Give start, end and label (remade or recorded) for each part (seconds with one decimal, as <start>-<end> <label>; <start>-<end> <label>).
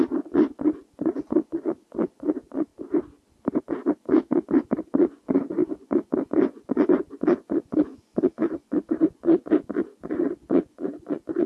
0.0-2.7 remade; 2.7-3.6 recorded; 3.6-11.5 remade